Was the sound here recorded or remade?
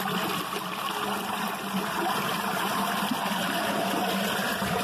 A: recorded